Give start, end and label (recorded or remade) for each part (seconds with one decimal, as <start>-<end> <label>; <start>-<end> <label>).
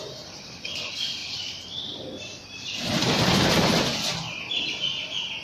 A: 0.0-1.2 recorded; 1.2-4.4 remade; 4.4-5.4 recorded